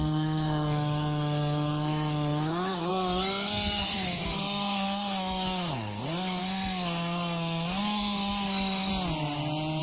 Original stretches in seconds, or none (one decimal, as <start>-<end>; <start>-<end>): 8.9-9.8